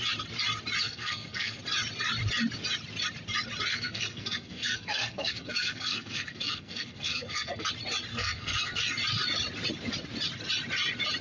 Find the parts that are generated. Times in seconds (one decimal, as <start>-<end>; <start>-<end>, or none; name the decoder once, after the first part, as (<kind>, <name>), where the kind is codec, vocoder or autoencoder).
0.8-1.6 (codec, SNAC); 3.7-7.7; 8.1-8.8